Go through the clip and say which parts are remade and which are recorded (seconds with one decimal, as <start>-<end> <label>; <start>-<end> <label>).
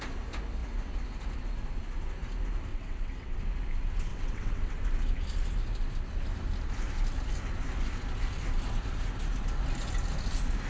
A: 0.0-2.7 recorded; 2.7-3.4 remade; 3.4-4.1 recorded; 4.1-4.8 remade; 4.8-10.7 recorded